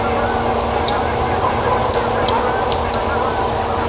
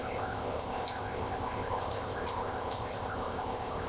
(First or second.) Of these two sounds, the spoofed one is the second